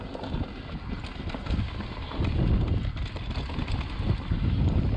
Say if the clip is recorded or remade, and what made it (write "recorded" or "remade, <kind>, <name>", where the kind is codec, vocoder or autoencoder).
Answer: recorded